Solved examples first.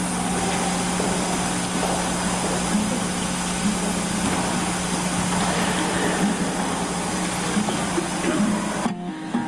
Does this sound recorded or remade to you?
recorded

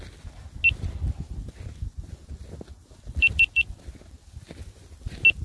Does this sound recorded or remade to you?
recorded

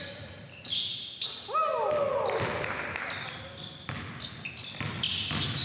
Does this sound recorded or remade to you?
recorded